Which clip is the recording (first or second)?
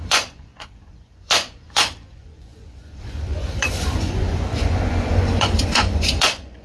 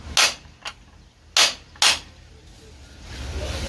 second